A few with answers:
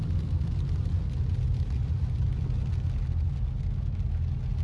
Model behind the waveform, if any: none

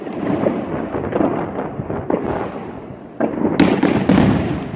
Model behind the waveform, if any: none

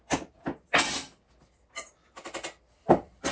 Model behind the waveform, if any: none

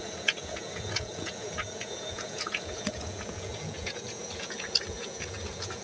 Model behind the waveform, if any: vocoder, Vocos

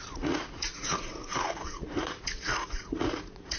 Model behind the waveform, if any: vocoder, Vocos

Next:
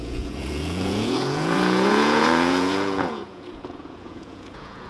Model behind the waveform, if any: vocoder, Vocos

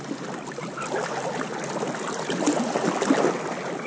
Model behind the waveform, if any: none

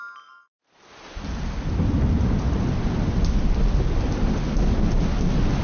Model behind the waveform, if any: none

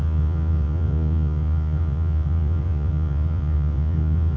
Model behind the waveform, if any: vocoder, Vocos